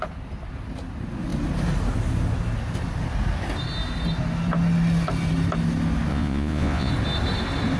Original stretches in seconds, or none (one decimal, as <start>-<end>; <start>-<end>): 0.0-6.1; 6.9-7.8